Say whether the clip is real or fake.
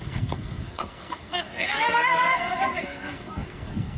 fake